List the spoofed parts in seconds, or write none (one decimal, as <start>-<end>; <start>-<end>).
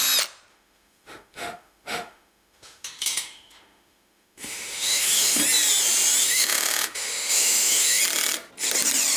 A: 0.5-5.4; 6.2-8.0